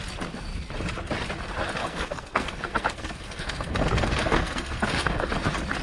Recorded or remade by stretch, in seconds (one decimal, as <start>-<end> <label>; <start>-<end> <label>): 0.0-1.8 recorded; 1.8-5.3 remade; 5.3-5.8 recorded